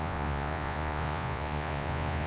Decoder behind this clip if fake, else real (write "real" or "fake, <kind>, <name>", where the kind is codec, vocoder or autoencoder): fake, vocoder, Vocos